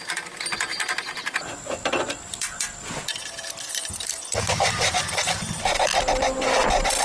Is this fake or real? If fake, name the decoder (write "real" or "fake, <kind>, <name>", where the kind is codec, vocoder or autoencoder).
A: fake, vocoder, BigVGAN v2